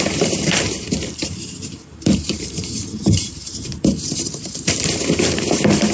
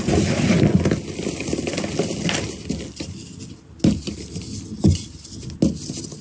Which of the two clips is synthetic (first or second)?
first